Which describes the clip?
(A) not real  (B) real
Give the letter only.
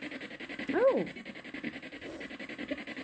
B